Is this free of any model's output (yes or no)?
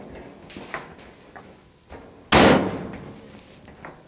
yes